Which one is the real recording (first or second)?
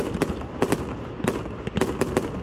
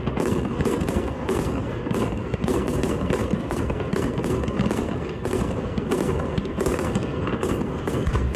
first